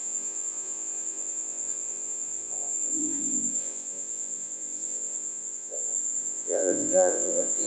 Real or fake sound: fake